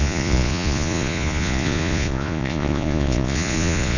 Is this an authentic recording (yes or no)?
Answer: no